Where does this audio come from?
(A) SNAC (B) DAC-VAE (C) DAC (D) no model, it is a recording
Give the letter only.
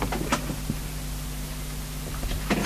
D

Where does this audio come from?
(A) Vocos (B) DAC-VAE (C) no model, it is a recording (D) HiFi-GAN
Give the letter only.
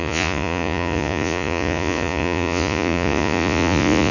A